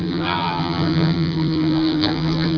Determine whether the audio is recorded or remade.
remade